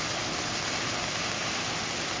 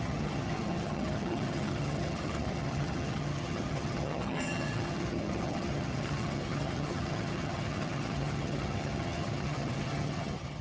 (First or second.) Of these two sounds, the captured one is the first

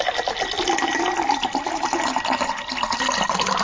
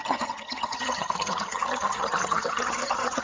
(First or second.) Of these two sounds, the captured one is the first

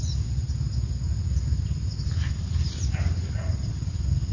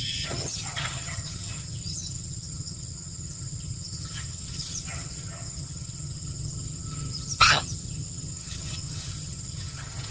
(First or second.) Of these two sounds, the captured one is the first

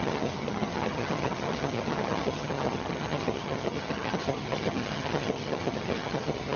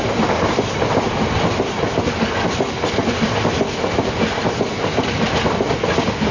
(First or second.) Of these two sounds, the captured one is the second